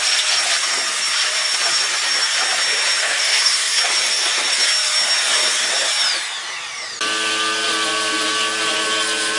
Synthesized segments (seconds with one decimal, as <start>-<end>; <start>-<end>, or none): 3.0-3.8